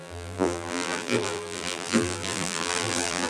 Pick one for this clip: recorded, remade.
remade